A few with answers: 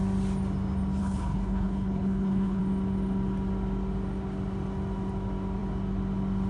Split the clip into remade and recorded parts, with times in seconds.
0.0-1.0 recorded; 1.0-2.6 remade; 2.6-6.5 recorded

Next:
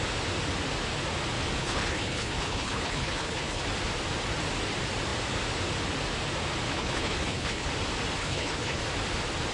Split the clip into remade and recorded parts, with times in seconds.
0.0-1.6 recorded; 1.6-3.6 remade; 3.6-6.7 recorded; 6.7-7.7 remade; 7.7-8.2 recorded; 8.2-8.8 remade; 8.8-9.5 recorded

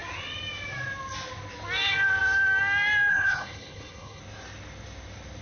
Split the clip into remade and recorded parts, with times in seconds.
0.0-3.1 recorded; 3.1-4.2 remade; 4.2-5.4 recorded

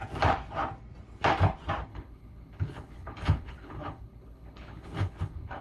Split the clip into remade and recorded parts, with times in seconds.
0.0-1.9 recorded; 1.9-5.6 remade

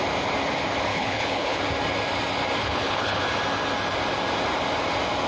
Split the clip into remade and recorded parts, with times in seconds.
0.0-0.9 recorded; 0.9-1.6 remade; 1.6-2.6 recorded; 2.6-3.2 remade; 3.2-5.3 recorded